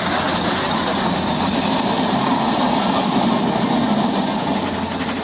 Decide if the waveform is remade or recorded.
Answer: recorded